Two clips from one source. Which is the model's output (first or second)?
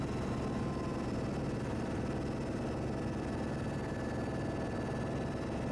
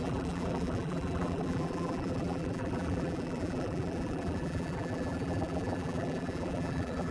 second